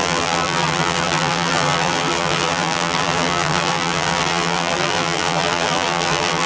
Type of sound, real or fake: fake